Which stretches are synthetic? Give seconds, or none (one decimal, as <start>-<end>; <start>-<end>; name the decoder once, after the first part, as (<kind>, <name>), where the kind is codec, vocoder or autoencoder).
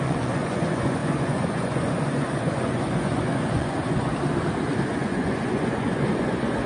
0.0-4.1 (vocoder, Vocos); 4.9-6.7